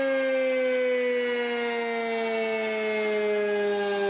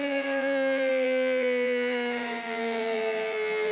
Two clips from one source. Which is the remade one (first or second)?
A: second